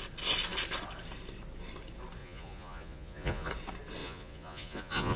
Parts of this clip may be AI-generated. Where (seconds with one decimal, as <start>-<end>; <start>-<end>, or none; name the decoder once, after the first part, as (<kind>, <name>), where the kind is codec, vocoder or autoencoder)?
2.2-3.5 (vocoder, Vocos); 4.0-5.2